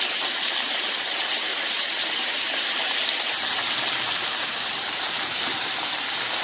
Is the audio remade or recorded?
remade